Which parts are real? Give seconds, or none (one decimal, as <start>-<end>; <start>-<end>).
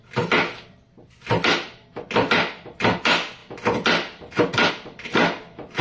0.0-5.8